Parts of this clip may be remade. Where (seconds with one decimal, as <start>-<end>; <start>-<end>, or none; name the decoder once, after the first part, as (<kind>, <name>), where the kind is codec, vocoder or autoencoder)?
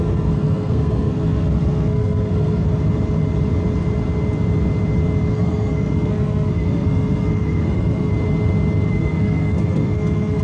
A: 0.0-2.7 (codec, SNAC); 5.3-8.1; 8.9-10.4